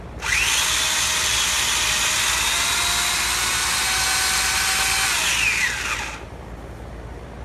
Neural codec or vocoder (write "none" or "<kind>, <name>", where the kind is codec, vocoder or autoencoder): none